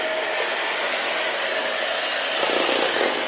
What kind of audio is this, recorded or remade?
recorded